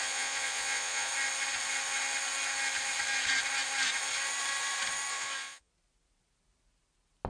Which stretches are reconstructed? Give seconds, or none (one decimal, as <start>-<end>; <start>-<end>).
0.0-1.1; 5.1-5.7